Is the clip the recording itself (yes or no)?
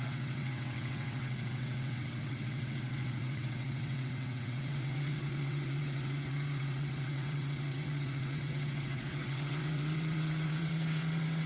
no